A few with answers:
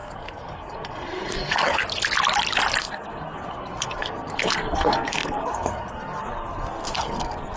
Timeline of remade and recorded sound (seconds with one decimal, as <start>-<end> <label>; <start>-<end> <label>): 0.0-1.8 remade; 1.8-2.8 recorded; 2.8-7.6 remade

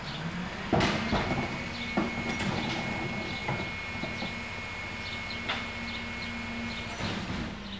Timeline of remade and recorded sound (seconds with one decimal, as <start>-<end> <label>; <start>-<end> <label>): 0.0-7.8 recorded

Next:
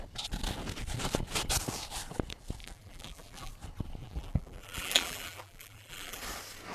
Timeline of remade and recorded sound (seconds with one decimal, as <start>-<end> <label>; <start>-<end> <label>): 0.0-2.6 recorded; 2.6-3.5 remade; 3.5-4.0 recorded; 4.0-6.2 remade; 6.2-6.7 recorded